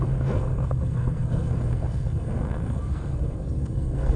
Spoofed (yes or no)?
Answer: yes